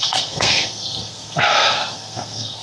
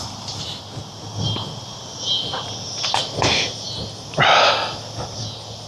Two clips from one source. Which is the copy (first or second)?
first